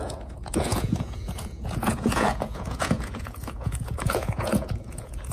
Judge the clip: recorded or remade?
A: remade